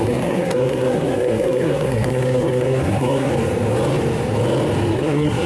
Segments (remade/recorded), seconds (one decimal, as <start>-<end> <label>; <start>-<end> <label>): 0.0-3.3 remade; 3.3-4.9 recorded; 4.9-5.5 remade